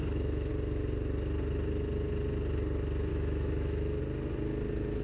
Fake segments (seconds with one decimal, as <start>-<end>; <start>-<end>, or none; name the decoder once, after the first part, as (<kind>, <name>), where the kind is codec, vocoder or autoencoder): 0.0-0.5 (autoencoder, DAC-VAE); 3.1-4.0